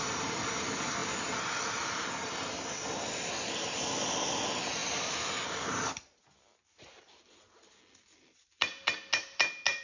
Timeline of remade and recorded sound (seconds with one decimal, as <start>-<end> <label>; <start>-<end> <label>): 0.0-9.8 recorded